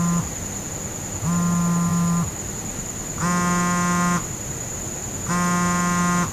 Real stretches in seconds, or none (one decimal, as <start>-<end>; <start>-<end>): 0.0-6.3